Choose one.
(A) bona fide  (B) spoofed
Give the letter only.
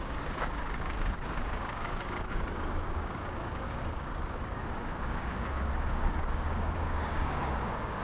B